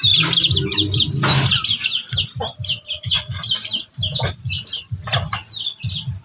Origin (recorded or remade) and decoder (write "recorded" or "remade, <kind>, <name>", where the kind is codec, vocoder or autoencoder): recorded